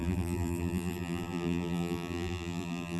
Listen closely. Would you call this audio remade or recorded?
remade